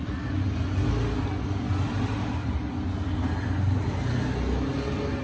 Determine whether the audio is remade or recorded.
recorded